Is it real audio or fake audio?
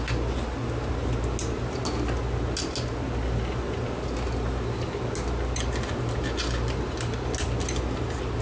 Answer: real